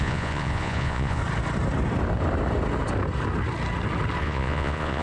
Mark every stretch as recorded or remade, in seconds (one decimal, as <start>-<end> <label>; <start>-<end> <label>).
0.0-1.2 remade; 1.2-4.2 recorded; 4.2-5.0 remade

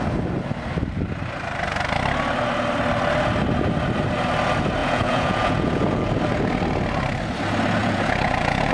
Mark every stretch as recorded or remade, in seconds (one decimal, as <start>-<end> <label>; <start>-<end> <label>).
0.0-4.8 recorded; 4.8-6.1 remade; 6.1-7.8 recorded; 7.8-8.7 remade

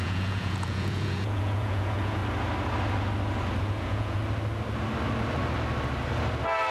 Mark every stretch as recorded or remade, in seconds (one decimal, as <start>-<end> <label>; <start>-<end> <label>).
0.0-2.2 remade; 2.2-3.6 recorded; 3.6-4.2 remade; 4.2-6.7 recorded

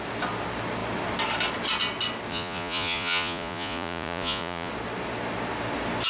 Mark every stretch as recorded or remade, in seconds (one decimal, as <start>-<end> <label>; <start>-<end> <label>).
0.0-2.3 recorded; 2.3-4.7 remade; 4.7-6.1 recorded

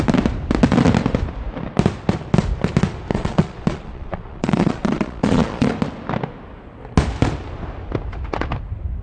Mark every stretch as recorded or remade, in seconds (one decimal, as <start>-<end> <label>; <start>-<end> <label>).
0.0-3.1 recorded; 3.1-5.7 remade; 5.7-9.0 recorded